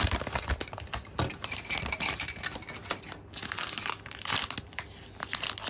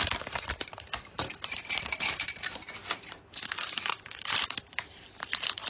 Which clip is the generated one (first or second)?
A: second